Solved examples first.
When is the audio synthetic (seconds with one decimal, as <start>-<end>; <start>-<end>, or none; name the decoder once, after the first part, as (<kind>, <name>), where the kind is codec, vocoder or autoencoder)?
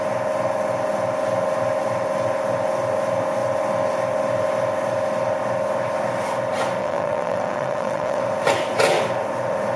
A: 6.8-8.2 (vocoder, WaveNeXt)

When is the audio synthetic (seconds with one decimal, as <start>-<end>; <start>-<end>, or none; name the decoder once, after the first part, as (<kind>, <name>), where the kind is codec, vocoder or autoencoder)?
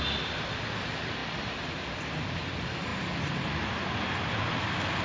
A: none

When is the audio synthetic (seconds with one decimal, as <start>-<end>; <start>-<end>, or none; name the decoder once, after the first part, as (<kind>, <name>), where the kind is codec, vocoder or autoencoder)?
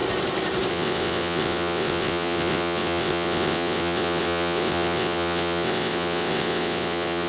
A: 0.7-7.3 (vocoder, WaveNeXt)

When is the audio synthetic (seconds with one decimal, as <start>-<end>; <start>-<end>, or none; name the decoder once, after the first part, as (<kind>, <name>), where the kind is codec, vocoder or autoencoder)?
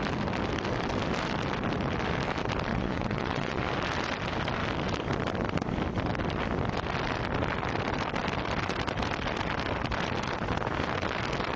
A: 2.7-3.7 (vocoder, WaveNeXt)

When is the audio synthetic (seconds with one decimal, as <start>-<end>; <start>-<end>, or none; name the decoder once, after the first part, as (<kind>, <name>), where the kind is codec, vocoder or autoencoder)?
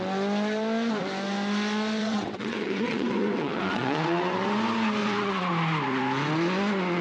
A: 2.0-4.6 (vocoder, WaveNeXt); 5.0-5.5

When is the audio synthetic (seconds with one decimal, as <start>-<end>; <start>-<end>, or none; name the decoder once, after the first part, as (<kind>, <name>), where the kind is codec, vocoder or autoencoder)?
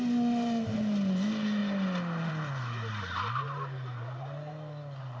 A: none